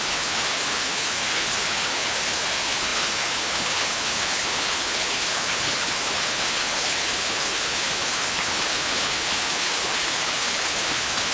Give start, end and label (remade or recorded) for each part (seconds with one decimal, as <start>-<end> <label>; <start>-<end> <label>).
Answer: 0.0-11.3 remade